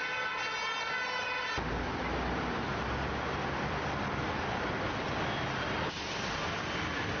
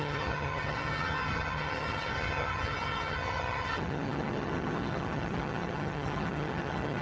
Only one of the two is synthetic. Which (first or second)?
second